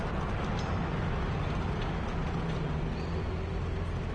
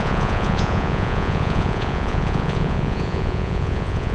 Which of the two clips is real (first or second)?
first